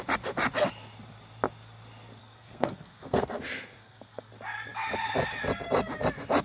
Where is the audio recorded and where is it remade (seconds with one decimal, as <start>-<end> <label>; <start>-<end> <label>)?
0.0-2.2 recorded; 2.2-3.4 remade; 3.4-3.8 recorded; 3.8-4.3 remade; 4.3-6.4 recorded